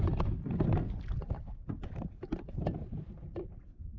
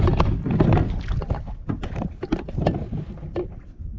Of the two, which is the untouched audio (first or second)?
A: second